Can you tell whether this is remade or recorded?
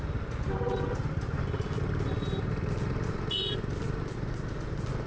recorded